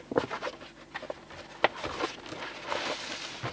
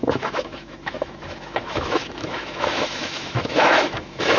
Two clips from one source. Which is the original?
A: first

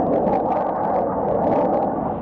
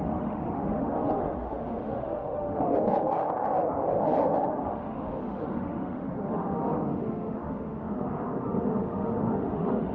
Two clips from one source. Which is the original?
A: first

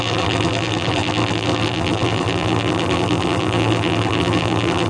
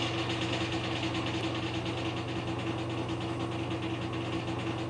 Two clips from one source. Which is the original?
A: second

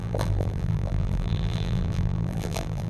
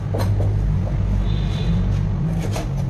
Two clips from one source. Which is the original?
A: second